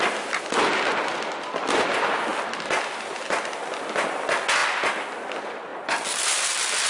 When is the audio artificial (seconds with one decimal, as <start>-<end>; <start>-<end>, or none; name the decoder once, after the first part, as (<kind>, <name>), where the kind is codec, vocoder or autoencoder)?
none